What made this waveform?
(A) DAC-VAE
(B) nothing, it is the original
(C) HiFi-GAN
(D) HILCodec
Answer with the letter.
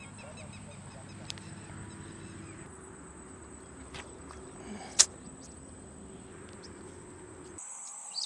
B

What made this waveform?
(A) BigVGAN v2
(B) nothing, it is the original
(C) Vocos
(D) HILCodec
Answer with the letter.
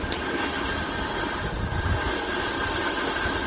B